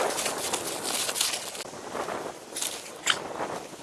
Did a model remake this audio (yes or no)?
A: no